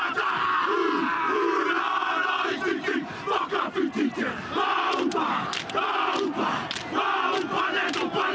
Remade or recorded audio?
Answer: recorded